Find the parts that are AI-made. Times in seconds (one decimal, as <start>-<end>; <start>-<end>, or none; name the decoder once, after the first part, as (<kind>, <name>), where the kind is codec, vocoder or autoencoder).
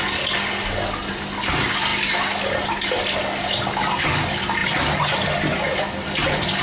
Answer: none